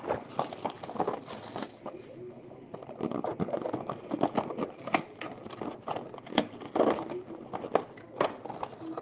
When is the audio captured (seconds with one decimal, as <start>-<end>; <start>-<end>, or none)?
0.0-9.0

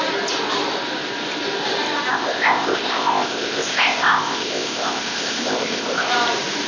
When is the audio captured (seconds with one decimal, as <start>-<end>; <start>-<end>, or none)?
0.0-2.1; 6.1-6.7

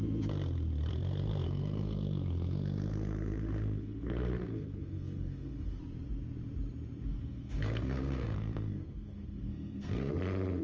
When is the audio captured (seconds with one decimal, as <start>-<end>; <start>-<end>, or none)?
0.0-0.9; 5.8-7.1; 10.1-10.6

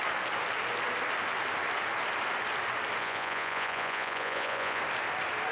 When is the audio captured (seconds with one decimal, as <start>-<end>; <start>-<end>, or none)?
0.0-3.0; 4.8-5.5

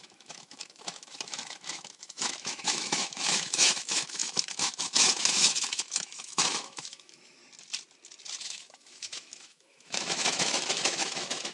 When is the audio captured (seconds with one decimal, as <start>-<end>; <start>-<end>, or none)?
7.4-8.4

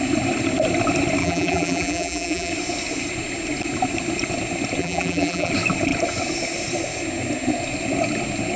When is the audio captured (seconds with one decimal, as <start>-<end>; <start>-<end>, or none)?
0.0-1.2; 2.5-4.8; 5.5-8.6

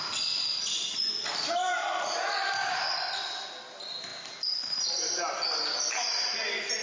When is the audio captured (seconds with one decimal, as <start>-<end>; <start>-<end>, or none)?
0.0-4.1; 5.8-6.8

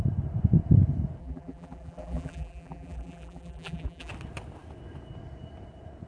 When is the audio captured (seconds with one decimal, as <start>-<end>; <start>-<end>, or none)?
0.0-1.2; 4.1-6.1